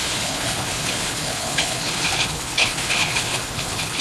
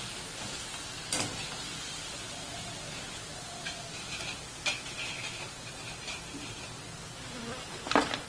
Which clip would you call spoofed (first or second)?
first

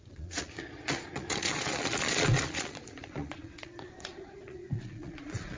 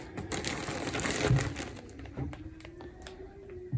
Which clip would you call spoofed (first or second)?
first